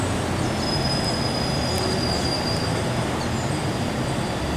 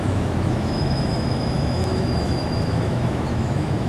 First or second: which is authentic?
first